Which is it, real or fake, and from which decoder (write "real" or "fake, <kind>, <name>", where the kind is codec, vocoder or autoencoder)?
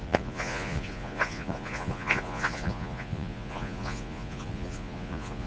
fake, vocoder, Vocos